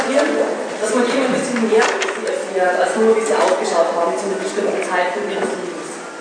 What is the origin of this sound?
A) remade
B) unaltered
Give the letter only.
B